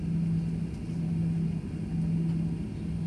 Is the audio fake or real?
real